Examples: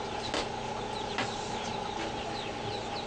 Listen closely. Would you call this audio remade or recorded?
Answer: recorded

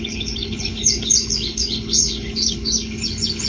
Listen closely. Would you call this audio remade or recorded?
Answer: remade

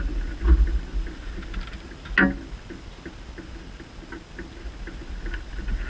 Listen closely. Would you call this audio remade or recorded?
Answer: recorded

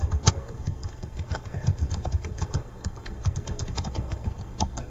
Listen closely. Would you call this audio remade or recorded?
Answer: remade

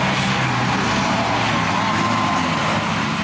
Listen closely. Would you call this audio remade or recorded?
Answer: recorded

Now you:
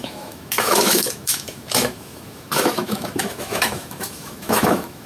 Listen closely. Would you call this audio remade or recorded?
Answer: remade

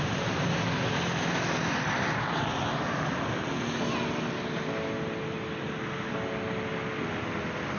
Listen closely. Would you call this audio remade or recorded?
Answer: recorded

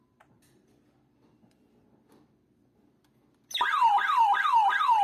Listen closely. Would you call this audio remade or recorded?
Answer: remade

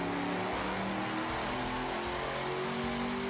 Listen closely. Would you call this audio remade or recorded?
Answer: recorded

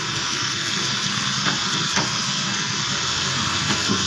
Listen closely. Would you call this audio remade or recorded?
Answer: remade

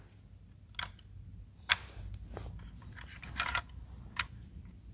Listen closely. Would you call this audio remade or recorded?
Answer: recorded